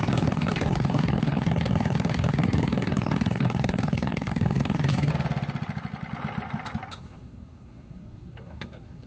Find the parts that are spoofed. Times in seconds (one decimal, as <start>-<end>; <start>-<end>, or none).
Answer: 0.0-5.1; 6.9-9.1